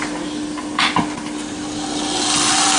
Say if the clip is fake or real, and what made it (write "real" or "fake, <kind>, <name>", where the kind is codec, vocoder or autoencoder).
real